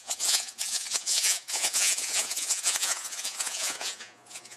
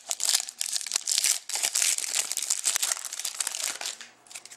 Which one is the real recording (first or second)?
second